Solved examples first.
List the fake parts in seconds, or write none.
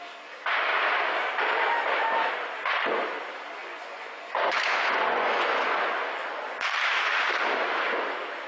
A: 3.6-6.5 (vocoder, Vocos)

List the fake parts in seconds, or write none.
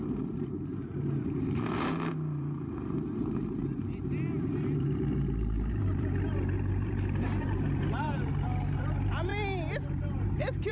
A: 0.0-9.3 (vocoder, BigVGAN v2); 9.9-10.7